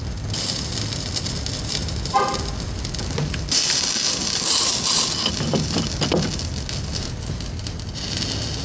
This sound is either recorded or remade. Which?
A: recorded